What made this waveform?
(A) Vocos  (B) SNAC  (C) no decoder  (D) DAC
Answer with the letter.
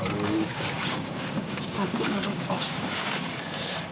D